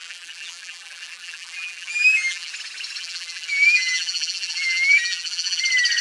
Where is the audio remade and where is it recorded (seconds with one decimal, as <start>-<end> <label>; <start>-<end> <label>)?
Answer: 0.0-2.5 remade; 2.5-3.0 recorded; 3.0-5.6 remade; 5.6-6.0 recorded